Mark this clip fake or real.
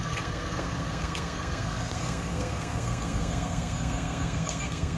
fake